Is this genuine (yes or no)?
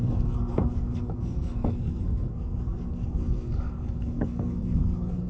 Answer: no